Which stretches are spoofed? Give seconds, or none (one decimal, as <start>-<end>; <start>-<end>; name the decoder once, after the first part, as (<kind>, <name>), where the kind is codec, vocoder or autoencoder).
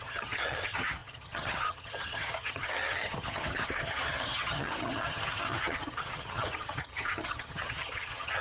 0.0-8.4 (vocoder, HiFi-GAN)